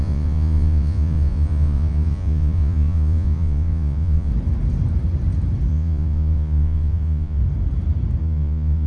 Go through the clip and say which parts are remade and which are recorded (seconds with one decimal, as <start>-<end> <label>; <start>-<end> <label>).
0.0-4.3 remade; 4.3-5.7 recorded; 5.7-7.4 remade; 7.4-8.2 recorded; 8.2-8.9 remade